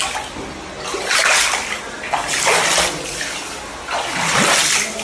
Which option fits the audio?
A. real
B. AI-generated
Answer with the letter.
A